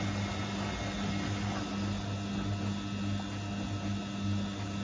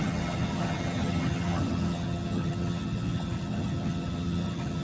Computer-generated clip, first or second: second